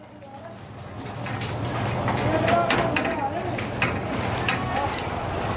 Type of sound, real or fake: real